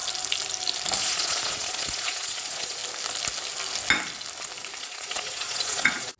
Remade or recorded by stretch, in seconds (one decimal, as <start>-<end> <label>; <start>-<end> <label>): 0.0-1.0 recorded; 1.0-2.8 remade; 2.8-4.8 recorded; 4.8-6.2 remade